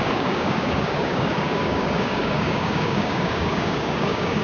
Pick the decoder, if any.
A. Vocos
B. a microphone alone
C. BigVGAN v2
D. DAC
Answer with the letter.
D